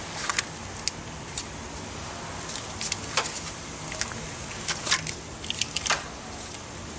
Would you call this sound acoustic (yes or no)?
yes